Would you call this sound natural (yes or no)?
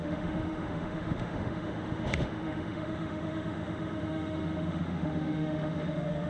no